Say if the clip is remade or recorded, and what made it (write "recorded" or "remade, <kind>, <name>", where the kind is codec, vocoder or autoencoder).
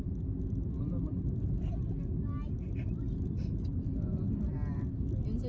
recorded